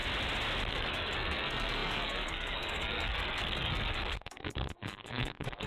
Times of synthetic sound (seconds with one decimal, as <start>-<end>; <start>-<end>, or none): 0.7-5.7